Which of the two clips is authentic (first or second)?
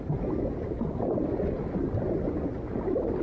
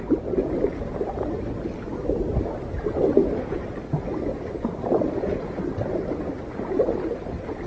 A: first